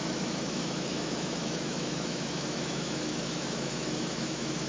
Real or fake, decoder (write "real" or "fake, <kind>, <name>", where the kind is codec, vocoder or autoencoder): fake, autoencoder, DAC-VAE